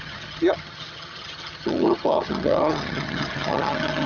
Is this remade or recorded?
remade